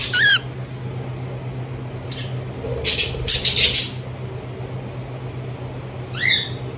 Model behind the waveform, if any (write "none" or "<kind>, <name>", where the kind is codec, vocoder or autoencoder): none